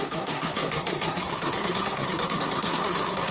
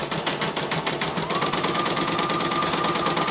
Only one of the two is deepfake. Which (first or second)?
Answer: first